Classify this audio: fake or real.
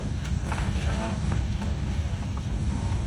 fake